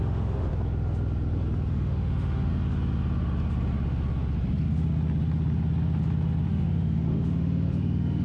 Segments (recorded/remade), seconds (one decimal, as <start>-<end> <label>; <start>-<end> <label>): 0.0-0.5 remade; 0.5-1.7 recorded; 1.7-2.5 remade; 2.5-6.5 recorded; 6.5-8.2 remade